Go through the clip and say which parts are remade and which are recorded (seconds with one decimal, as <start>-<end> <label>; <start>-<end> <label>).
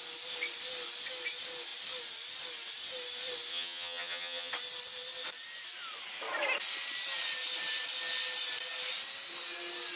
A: 0.0-3.5 recorded; 3.5-4.5 remade; 4.5-10.0 recorded